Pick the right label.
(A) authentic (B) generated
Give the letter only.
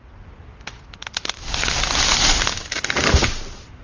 A